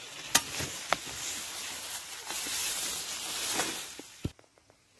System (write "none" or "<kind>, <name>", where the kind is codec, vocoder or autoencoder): none